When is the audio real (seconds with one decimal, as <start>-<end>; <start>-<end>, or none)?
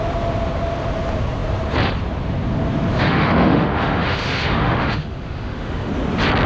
0.0-2.9; 5.9-6.5